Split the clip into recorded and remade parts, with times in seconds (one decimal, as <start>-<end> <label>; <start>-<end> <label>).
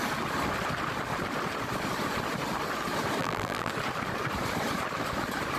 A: 0.0-3.2 recorded; 3.2-3.7 remade; 3.7-5.6 recorded